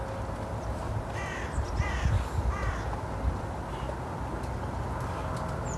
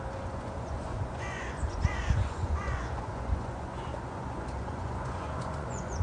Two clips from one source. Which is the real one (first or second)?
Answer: first